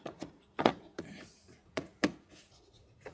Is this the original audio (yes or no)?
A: no